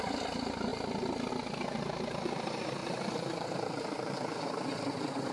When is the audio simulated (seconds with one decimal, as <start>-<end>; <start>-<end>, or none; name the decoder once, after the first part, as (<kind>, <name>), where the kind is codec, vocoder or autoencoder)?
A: none

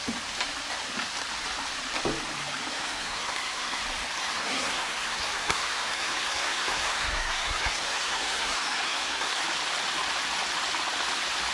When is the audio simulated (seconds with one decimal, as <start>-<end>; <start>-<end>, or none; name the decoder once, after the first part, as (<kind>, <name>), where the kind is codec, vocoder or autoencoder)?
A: 2.7-3.8 (codec, SNAC); 4.2-9.4